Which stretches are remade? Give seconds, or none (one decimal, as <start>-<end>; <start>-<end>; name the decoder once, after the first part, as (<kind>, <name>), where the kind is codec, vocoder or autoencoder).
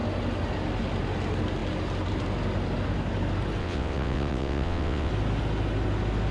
3.6-5.1 (vocoder, WaveNeXt)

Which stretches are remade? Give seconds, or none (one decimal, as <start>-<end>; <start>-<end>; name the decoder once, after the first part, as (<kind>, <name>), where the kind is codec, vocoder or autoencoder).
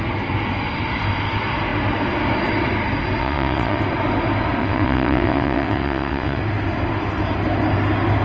3.2-3.8 (vocoder, WaveNeXt); 4.6-6.4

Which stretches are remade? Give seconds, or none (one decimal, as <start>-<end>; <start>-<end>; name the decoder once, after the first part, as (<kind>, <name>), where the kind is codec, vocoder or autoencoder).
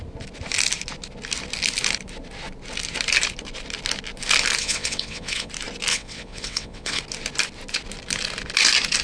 4.6-5.5 (vocoder, WaveNeXt); 5.9-7.0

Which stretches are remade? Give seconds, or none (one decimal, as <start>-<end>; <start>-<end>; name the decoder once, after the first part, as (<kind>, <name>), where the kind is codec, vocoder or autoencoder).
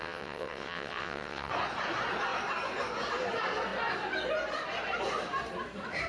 0.0-1.5 (vocoder, WaveNeXt)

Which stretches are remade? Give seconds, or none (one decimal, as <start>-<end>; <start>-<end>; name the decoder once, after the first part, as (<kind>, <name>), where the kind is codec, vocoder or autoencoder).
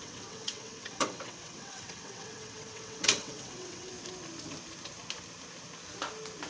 0.0-3.9 (vocoder, WaveNeXt)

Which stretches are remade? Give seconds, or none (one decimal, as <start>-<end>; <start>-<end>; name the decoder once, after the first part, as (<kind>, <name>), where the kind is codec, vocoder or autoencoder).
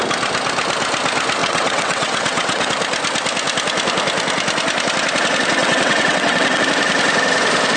1.4-2.7 (vocoder, WaveNeXt); 5.6-6.6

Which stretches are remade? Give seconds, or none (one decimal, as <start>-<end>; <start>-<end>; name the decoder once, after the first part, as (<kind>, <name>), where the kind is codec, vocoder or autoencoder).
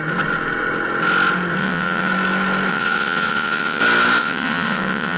1.6-2.1 (vocoder, WaveNeXt); 2.7-3.8; 4.2-5.2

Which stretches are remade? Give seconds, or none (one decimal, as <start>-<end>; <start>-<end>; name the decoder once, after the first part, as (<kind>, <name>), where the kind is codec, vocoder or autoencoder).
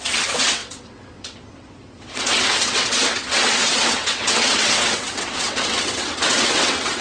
0.0-7.0 (vocoder, WaveNeXt)